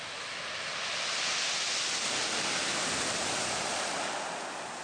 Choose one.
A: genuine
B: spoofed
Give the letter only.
A